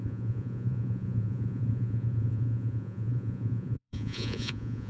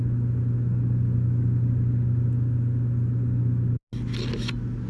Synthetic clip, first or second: first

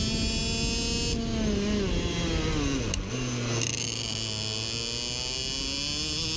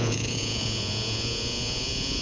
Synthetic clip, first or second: second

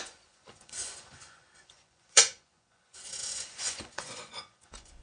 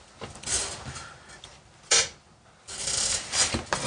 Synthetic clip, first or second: first